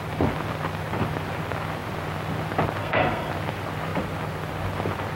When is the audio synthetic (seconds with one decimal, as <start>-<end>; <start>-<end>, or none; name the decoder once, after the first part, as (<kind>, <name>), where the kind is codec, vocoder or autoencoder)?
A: 2.8-3.3 (codec, SNAC)